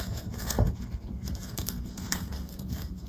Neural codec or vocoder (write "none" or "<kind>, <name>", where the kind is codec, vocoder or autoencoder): codec, SNAC